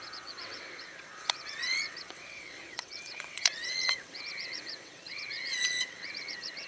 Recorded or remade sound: remade